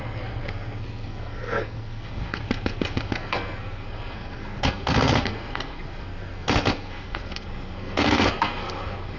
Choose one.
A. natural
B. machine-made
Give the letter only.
B